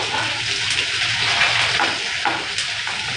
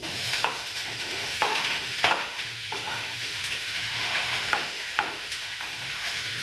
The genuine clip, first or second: first